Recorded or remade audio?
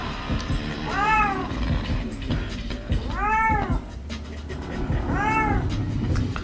remade